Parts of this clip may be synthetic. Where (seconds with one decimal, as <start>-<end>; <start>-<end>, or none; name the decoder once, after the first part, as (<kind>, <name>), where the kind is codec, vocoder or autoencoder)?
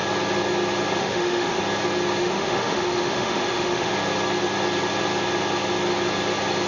1.0-1.6 (autoencoder, DAC-VAE); 2.2-3.9